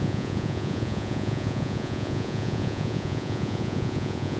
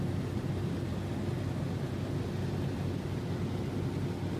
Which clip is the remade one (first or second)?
first